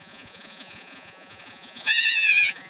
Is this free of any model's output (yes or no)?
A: no